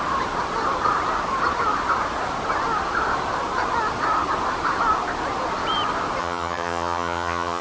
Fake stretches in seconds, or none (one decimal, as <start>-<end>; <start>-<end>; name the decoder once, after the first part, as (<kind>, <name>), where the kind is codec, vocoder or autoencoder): 6.2-7.6 (vocoder, HiFi-GAN)